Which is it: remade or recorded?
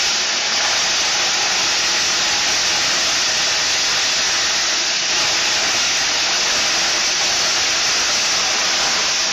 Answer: recorded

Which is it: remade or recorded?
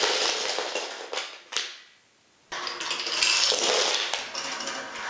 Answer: recorded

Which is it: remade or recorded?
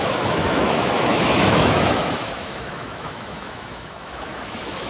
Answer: remade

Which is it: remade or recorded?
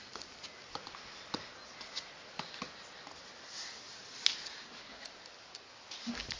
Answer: recorded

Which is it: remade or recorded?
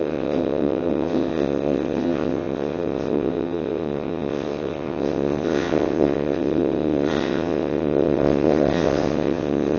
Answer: remade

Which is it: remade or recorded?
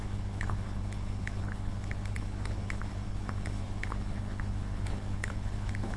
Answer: remade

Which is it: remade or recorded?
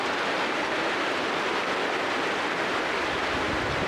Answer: recorded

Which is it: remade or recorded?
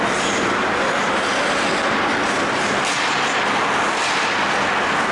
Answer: recorded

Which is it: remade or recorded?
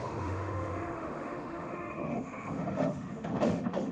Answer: remade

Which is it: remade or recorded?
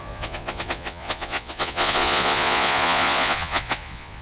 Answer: remade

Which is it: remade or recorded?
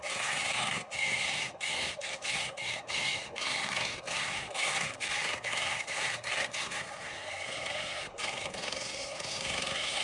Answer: remade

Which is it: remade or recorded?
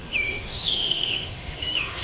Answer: remade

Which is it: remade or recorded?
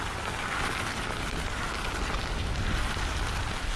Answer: recorded